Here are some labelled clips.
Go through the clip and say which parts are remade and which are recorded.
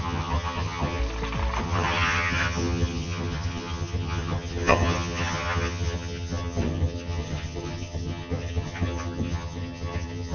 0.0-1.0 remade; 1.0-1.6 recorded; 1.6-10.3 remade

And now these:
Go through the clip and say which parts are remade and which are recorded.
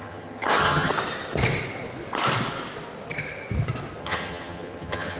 0.0-0.9 remade; 0.9-4.0 recorded; 4.0-5.2 remade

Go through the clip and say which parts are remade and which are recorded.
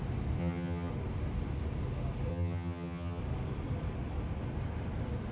0.0-0.4 recorded; 0.4-0.9 remade; 0.9-2.3 recorded; 2.3-3.2 remade; 3.2-5.3 recorded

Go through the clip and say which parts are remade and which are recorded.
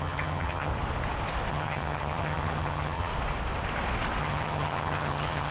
0.0-0.7 remade; 0.7-1.5 recorded; 1.5-3.1 remade; 3.1-4.2 recorded; 4.2-5.5 remade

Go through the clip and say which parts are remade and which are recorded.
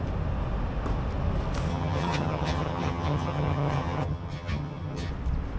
0.0-1.7 recorded; 1.7-5.1 remade; 5.1-5.6 recorded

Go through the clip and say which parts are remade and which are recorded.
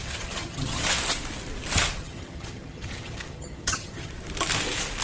0.0-0.8 remade; 0.8-2.0 recorded; 2.0-4.1 remade; 4.1-5.0 recorded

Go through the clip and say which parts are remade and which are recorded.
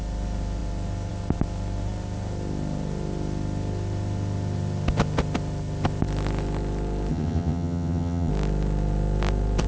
0.0-7.1 recorded; 7.1-8.3 remade; 8.3-9.7 recorded